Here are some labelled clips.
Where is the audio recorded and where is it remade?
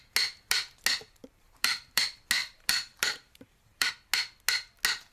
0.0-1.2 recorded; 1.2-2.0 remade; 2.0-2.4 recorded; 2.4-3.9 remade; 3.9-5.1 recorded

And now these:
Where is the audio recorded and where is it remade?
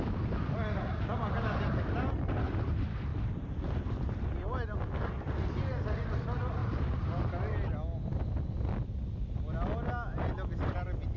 0.0-11.2 recorded